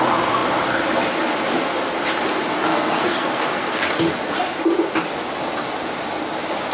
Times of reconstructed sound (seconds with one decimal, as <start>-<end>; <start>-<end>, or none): 2.7-3.8

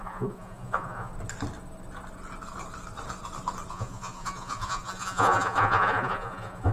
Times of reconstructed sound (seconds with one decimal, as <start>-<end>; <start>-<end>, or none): 0.0-1.1; 3.7-6.7

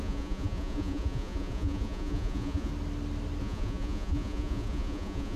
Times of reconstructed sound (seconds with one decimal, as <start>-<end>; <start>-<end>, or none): 0.0-2.7; 3.4-5.4

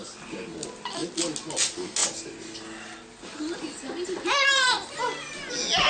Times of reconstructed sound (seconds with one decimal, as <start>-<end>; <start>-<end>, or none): none

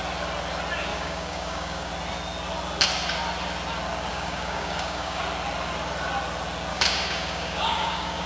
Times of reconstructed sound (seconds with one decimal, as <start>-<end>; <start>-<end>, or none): 0.9-1.9; 4.1-5.2; 6.7-8.3

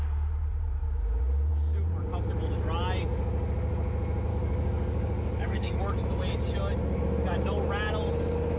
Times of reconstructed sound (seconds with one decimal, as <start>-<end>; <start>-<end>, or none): 4.3-5.7